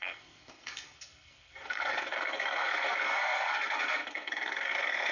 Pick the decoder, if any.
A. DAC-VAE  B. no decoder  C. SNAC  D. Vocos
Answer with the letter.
C